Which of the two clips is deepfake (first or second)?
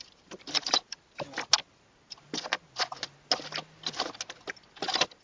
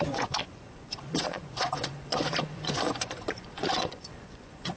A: second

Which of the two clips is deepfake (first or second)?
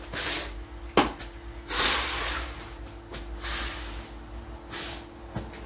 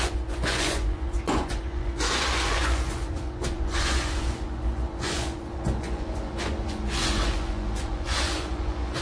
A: second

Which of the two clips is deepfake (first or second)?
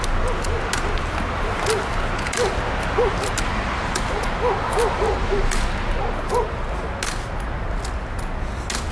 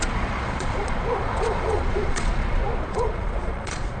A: second